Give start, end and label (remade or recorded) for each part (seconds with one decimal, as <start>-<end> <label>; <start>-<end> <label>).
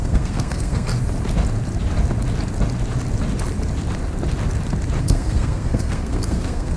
0.0-0.9 remade; 0.9-5.0 recorded; 5.0-6.8 remade